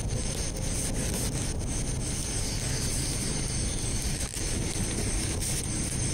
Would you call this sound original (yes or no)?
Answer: yes